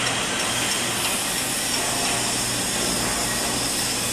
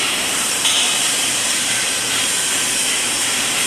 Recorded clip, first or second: first